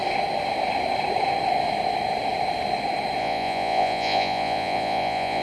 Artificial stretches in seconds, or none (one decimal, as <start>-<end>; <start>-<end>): 3.2-5.4